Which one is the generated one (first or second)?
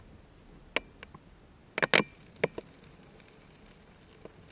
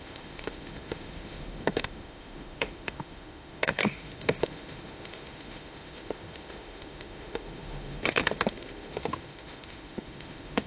second